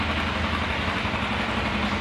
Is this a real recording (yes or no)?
yes